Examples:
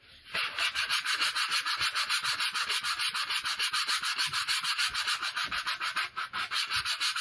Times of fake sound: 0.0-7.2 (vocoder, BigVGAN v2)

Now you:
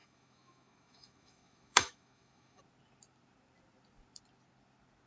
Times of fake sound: 0.0-2.6 (autoencoder, DAC-VAE)